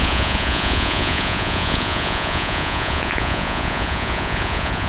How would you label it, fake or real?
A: fake